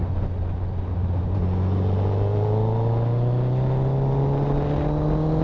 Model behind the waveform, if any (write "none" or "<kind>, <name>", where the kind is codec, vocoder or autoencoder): none